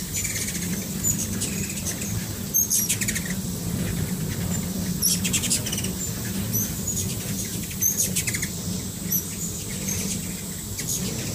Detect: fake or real real